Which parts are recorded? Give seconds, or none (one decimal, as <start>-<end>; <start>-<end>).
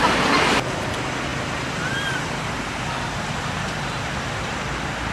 0.0-5.1